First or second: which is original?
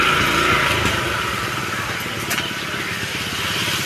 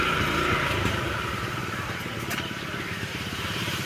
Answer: first